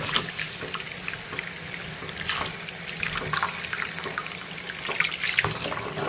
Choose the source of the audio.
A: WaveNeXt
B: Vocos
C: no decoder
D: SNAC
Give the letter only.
C